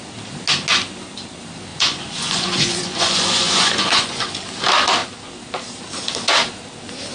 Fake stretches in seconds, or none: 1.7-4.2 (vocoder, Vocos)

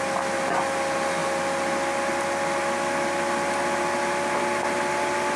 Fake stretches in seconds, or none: none

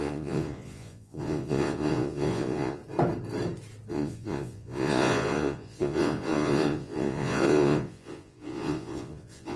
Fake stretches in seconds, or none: 0.0-2.8 (vocoder, Vocos); 3.9-9.6

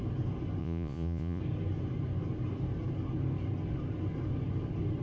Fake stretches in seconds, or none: 0.6-1.4 (vocoder, Vocos)

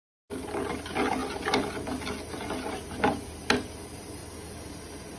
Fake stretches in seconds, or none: none

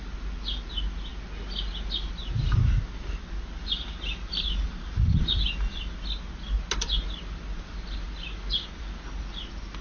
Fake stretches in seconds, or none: none